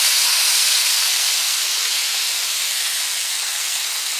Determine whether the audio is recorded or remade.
remade